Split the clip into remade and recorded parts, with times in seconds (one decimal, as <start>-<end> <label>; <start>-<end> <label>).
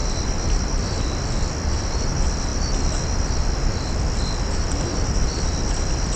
0.0-6.2 recorded